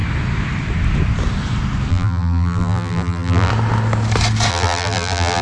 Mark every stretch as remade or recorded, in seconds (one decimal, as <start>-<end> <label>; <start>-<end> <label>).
0.0-1.9 recorded; 1.9-3.5 remade; 3.5-4.5 recorded; 4.5-5.4 remade

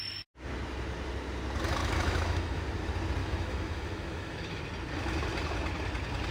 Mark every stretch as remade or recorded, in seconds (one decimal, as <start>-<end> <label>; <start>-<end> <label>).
0.0-1.8 recorded; 1.8-2.6 remade; 2.6-3.2 recorded; 3.2-4.6 remade; 4.6-6.3 recorded